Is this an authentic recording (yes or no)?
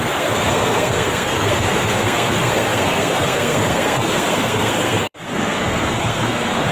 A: no